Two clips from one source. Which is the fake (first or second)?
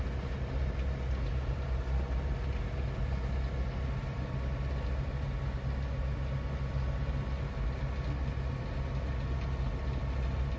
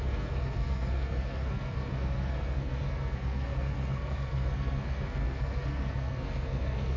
second